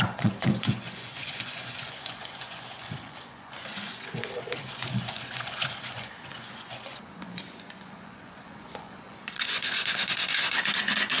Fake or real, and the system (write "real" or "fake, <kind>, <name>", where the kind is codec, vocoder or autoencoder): fake, vocoder, Vocos